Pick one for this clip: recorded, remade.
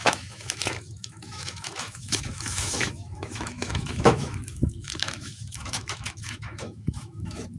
remade